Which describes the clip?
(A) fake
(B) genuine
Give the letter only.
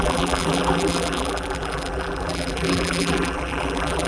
A